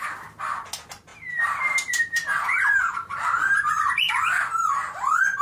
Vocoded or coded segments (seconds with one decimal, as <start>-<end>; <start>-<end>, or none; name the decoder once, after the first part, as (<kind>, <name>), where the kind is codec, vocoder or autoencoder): 1.1-4.1 (vocoder, BigVGAN v2)